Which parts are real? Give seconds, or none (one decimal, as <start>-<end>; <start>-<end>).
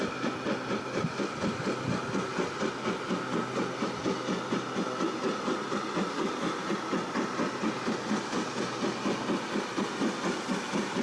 0.0-11.0